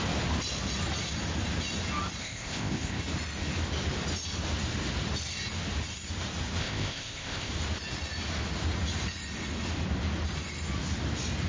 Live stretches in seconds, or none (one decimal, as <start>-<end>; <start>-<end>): 0.0-2.2; 3.0-6.6; 7.5-11.5